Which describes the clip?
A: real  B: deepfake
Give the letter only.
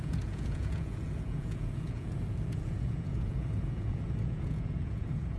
B